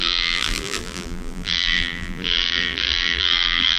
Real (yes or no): no